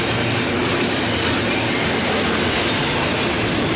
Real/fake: real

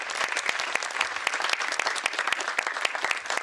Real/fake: real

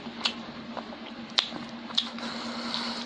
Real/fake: real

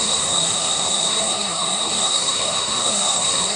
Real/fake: fake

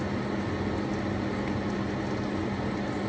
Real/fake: real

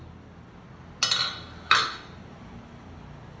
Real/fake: real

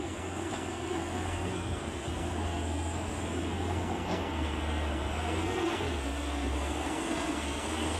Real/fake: fake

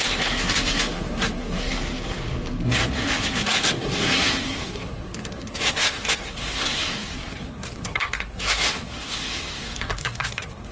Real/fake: fake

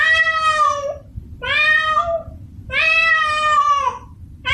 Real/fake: real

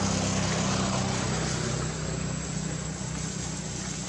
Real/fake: real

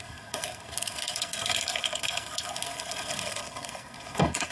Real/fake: fake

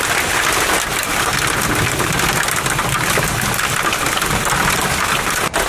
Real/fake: real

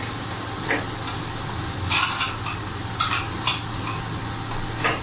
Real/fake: real